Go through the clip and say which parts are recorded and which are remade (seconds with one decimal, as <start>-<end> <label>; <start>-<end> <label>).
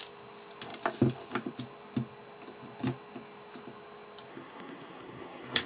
0.0-4.3 recorded; 4.3-5.7 remade